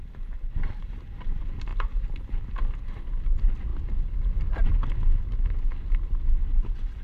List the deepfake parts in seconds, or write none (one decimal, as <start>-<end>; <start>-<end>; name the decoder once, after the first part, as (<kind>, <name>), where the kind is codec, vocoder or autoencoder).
none